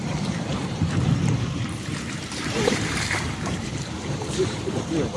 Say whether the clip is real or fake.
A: fake